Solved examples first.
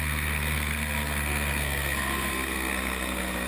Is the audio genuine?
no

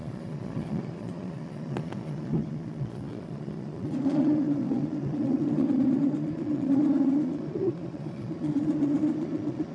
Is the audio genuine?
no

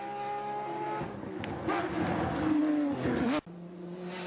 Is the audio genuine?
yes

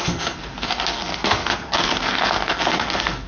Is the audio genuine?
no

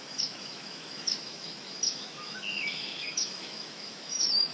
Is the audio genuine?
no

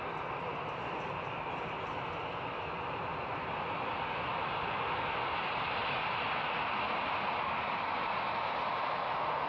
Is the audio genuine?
yes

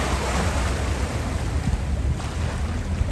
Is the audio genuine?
yes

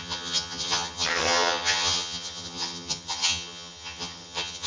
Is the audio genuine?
no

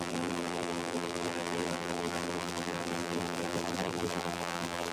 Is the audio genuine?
no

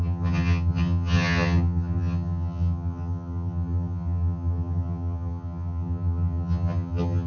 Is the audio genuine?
no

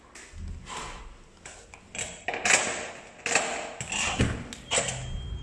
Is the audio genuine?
yes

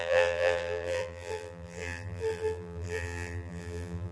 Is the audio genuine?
no